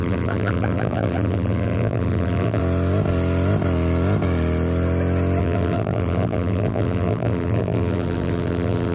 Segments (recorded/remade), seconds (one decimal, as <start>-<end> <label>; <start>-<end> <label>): 0.0-2.6 remade; 2.6-5.4 recorded; 5.4-8.9 remade